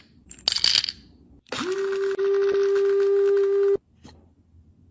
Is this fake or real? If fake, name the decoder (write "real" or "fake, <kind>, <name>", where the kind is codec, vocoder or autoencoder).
real